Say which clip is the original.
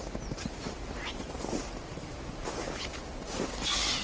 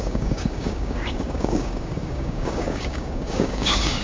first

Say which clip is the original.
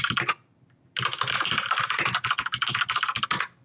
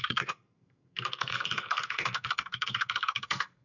first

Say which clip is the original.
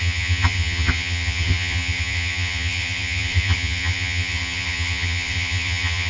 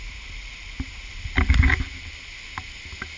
second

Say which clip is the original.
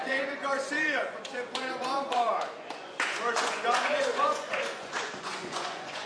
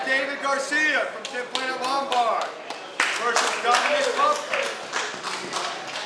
second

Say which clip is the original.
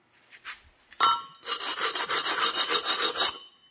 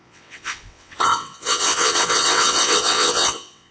first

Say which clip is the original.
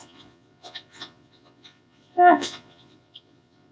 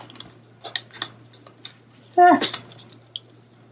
second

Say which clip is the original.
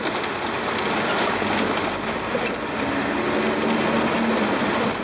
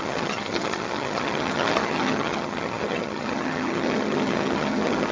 first